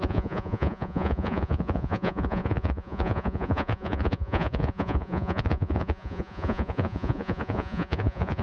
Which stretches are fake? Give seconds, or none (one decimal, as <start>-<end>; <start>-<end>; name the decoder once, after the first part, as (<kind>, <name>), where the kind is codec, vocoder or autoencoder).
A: 0.0-8.4 (vocoder, Vocos)